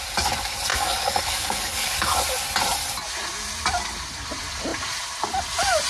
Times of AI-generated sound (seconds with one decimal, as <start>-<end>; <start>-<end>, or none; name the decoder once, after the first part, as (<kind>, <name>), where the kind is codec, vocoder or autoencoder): 0.7-2.2 (codec, DAC)